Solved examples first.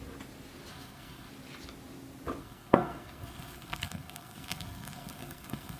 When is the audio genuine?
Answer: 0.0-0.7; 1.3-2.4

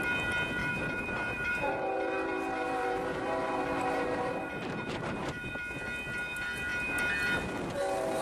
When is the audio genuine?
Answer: 0.0-0.6; 5.5-8.2

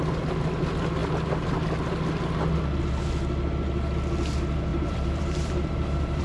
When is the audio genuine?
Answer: 0.0-4.7

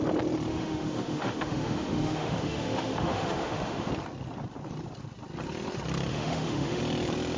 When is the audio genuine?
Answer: 0.0-0.5; 3.9-6.1; 6.8-7.4